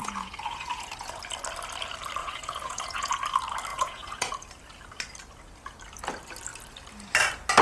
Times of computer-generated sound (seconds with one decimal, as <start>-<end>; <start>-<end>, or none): 0.0-1.2; 2.2-3.1; 3.7-4.3